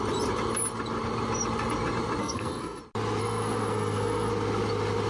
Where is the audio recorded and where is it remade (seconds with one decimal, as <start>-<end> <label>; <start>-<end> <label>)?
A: 0.0-2.2 recorded; 2.2-2.8 remade; 2.8-3.2 recorded; 3.2-4.3 remade; 4.3-5.1 recorded